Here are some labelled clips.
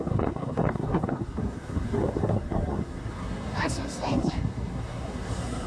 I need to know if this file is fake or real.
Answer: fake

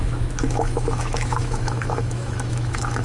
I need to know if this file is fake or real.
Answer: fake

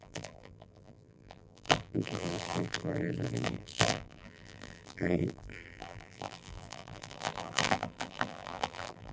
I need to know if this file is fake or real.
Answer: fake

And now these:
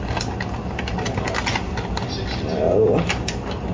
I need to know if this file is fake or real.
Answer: real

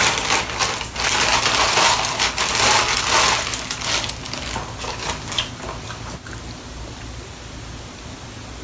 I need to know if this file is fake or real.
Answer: real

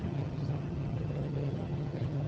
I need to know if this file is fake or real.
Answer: fake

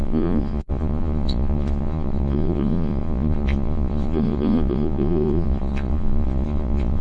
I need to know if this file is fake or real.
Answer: fake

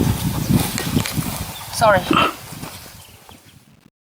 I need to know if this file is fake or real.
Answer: real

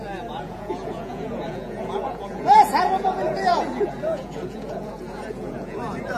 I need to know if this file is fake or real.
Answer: fake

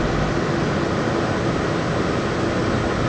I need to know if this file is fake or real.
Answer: real